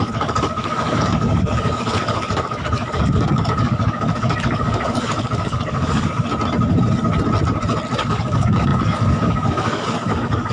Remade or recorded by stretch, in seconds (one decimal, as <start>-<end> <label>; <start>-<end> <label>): 0.0-6.3 remade; 6.3-8.0 recorded; 8.0-10.5 remade